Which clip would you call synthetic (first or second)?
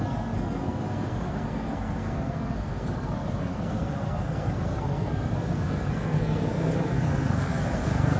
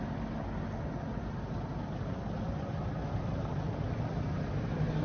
first